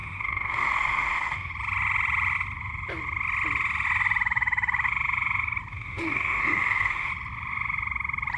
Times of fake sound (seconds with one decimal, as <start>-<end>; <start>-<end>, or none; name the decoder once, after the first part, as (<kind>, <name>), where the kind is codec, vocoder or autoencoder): 0.0-1.5 (autoencoder, DAC-VAE); 5.7-7.1